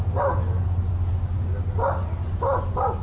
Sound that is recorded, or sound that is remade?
recorded